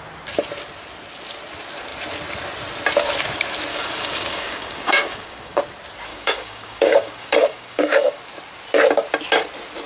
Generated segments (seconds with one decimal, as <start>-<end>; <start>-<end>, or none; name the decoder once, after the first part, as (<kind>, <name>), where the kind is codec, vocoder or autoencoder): 3.7-5.6 (codec, DAC); 6.1-8.2